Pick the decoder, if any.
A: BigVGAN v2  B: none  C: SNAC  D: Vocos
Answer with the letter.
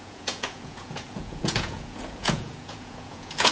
D